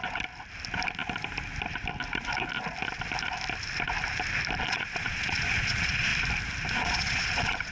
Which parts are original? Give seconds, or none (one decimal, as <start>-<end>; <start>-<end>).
0.0-4.6; 6.1-6.7